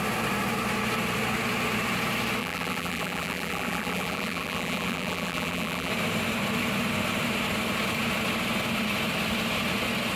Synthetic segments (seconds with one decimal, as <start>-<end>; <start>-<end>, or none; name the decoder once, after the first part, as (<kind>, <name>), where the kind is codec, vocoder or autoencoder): 2.4-5.9 (vocoder, BigVGAN v2)